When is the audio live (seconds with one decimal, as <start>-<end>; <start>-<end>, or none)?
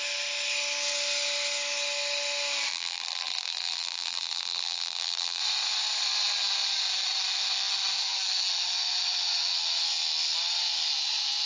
0.0-2.7; 5.4-11.5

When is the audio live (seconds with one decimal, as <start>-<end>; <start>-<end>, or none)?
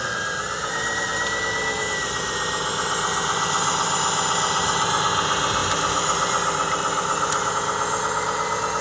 0.0-5.6; 7.5-8.8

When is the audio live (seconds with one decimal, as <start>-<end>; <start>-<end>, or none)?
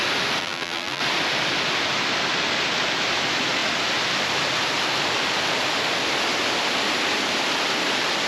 0.0-0.4; 1.0-8.3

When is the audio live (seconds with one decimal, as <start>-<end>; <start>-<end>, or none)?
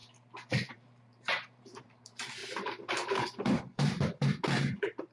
0.0-0.7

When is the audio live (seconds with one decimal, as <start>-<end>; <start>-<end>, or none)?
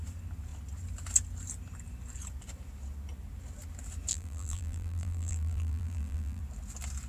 0.0-4.1; 6.4-7.1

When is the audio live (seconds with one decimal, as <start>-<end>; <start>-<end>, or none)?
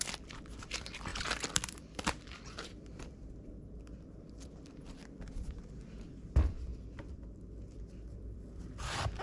none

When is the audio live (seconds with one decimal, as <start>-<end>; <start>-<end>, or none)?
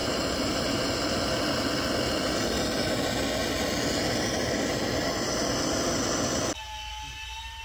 1.1-7.6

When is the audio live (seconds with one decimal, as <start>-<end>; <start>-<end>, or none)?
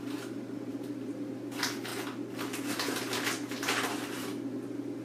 0.0-0.7; 1.3-5.0